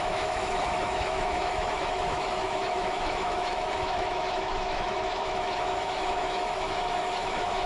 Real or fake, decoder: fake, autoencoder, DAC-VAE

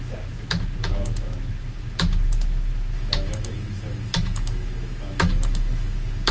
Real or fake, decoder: fake, autoencoder, DAC-VAE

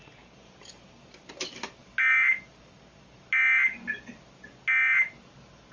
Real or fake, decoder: real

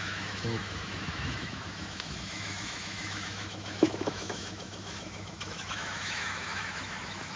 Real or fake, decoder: fake, autoencoder, DAC-VAE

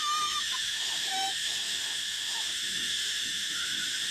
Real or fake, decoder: fake, autoencoder, DAC-VAE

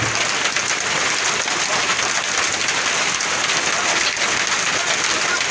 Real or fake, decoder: real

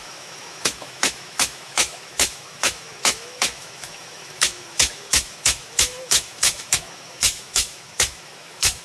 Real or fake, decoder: fake, autoencoder, DAC-VAE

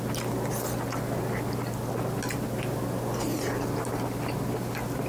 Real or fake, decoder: real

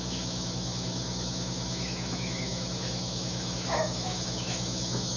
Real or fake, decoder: fake, autoencoder, DAC-VAE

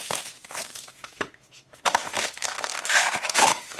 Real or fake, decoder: fake, autoencoder, DAC-VAE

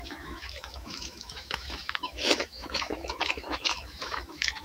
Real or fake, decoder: fake, autoencoder, DAC-VAE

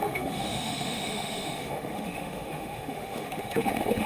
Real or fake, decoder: fake, autoencoder, DAC-VAE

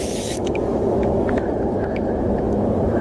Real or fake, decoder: fake, autoencoder, DAC-VAE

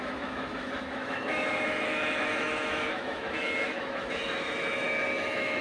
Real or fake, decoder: fake, autoencoder, DAC-VAE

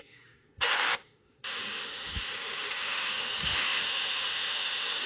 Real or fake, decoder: fake, autoencoder, DAC-VAE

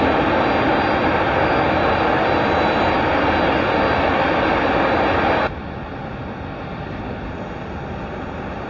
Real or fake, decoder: real